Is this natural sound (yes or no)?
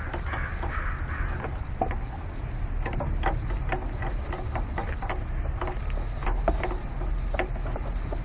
yes